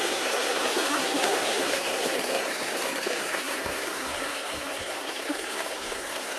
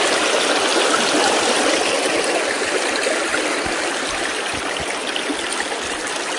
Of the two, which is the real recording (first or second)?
second